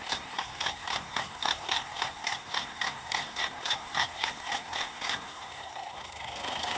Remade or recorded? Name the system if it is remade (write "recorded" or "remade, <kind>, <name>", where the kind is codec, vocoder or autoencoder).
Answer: remade, codec, SNAC